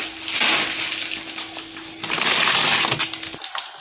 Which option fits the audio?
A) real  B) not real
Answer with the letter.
A